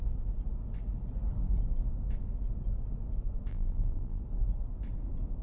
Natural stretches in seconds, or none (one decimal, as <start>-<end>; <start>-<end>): 0.0-3.5; 4.2-5.4

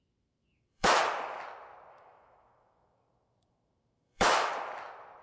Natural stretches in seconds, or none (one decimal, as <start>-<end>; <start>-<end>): 1.0-1.9; 4.5-5.2

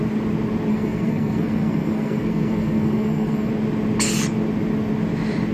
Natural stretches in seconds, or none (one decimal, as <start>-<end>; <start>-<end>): 0.0-0.7; 3.5-5.5

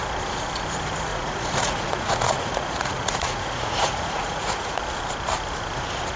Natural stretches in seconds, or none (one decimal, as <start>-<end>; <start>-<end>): 0.0-1.1; 4.8-6.2